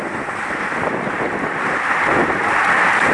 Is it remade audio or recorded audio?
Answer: remade